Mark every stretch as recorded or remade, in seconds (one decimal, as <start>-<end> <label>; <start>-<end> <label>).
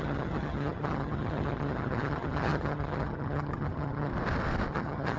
0.0-4.1 remade; 4.1-4.7 recorded; 4.7-5.2 remade